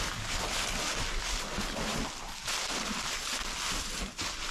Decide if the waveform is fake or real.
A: real